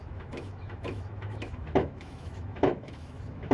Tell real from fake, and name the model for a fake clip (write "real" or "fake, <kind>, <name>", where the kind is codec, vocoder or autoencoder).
fake, autoencoder, DAC-VAE